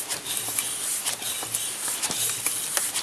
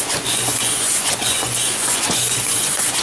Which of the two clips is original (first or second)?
first